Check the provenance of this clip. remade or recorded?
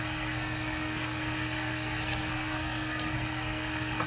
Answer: remade